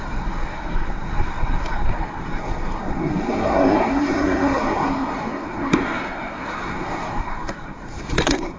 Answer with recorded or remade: remade